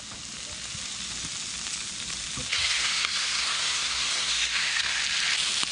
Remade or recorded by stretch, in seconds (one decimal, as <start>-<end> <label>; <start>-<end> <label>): 0.0-2.5 recorded; 2.5-5.0 remade; 5.0-5.7 recorded